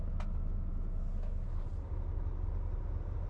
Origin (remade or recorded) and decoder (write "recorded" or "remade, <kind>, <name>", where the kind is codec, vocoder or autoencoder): recorded